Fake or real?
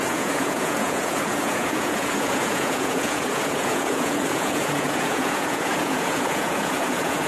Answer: fake